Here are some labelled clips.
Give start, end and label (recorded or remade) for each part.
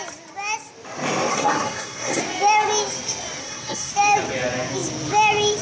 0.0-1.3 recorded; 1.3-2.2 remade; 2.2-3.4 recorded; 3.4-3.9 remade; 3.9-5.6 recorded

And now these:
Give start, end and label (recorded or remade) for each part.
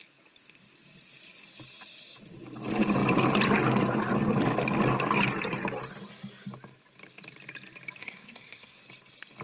0.0-8.0 recorded; 8.0-8.8 remade; 8.8-9.4 recorded